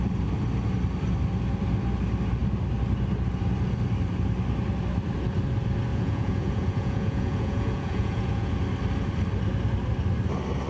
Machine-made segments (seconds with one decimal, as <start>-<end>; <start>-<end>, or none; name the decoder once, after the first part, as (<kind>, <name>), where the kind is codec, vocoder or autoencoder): 5.9-8.5 (vocoder, Vocos)